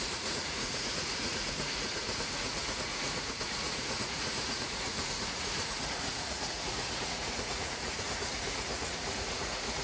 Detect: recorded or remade remade